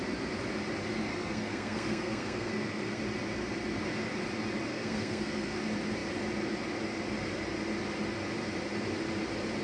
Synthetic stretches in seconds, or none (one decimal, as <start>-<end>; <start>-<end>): 1.1-3.0; 4.7-5.6